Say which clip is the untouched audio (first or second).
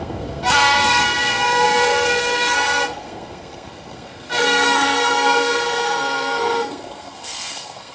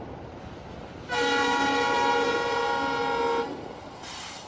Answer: second